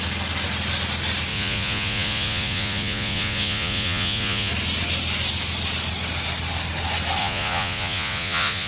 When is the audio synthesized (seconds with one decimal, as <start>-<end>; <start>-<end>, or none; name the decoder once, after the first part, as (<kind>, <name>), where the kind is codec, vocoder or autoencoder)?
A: 1.3-4.5 (vocoder, Vocos); 7.2-8.7